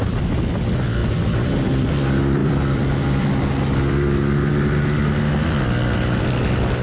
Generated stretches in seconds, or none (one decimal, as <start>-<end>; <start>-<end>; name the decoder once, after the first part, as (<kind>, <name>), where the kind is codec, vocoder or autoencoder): 1.0-1.7 (vocoder, BigVGAN v2); 2.4-3.3